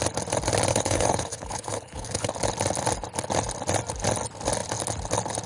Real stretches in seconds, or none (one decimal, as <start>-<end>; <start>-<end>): 0.0-0.7; 2.3-5.5